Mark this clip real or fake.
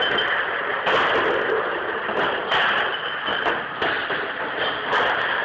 real